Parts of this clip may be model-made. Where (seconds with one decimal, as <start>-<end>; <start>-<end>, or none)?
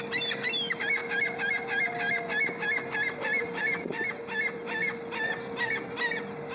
none